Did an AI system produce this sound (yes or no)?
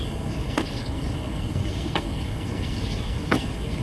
yes